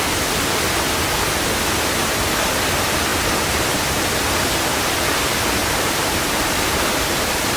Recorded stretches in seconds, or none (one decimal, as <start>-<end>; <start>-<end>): 0.0-5.6

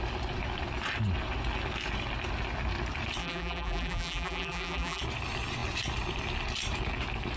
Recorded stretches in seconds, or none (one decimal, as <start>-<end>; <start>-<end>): 0.0-3.2; 5.0-7.4

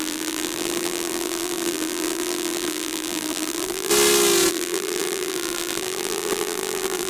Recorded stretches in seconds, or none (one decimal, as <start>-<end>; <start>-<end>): 3.9-4.5

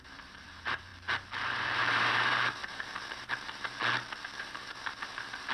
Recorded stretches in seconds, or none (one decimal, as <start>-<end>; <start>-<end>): none